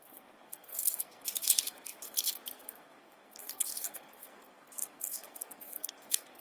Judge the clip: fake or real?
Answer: fake